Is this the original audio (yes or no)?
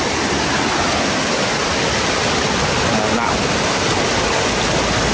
yes